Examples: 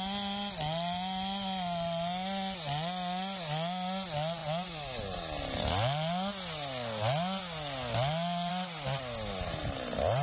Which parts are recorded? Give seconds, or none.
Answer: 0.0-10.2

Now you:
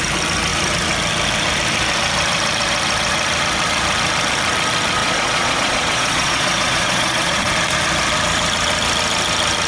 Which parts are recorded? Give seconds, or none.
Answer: 0.0-5.0; 7.5-9.7